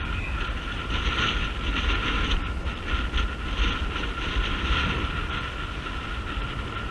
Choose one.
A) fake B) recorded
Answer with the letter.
B